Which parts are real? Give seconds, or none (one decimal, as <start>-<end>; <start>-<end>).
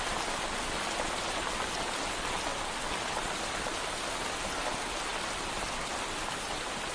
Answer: 0.0-6.9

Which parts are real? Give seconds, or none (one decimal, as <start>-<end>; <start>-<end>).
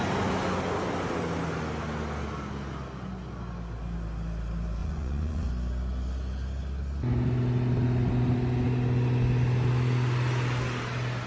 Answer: 0.0-4.8; 5.5-11.3